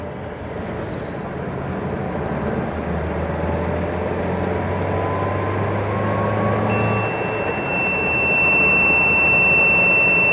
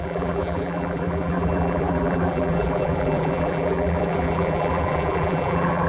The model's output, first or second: second